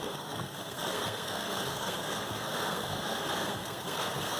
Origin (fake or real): fake